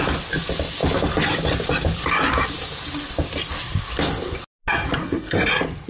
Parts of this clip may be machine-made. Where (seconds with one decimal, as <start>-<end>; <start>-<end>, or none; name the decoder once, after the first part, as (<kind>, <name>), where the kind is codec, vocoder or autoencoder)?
5.0-5.5 (codec, SNAC)